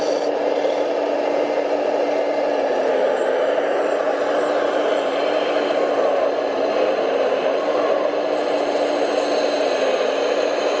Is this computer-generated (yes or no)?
no